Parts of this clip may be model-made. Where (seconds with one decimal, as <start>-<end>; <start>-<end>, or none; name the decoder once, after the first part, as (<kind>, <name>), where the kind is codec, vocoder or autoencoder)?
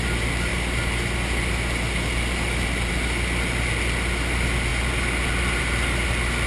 none